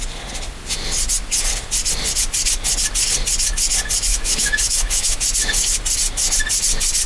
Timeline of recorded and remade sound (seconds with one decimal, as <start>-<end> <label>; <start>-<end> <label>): 0.0-4.1 recorded; 4.1-5.2 remade; 5.2-7.1 recorded